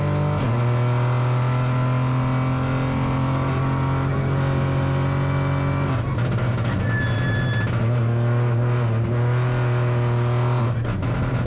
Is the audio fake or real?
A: real